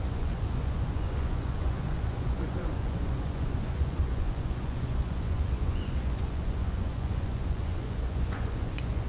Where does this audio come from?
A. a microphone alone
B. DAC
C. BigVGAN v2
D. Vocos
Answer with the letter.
D